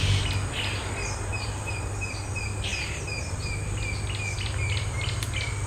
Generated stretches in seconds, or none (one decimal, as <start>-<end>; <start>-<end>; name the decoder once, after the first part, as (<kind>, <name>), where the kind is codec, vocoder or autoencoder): 1.3-2.1 (vocoder, BigVGAN v2)